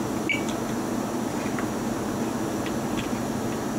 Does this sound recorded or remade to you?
recorded